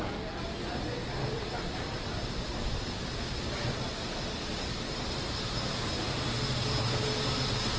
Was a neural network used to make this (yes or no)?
no